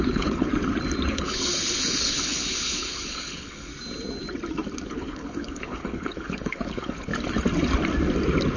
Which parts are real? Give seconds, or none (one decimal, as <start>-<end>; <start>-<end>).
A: 0.5-1.1; 3.7-4.9; 7.1-8.6